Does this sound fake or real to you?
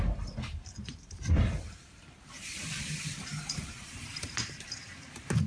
fake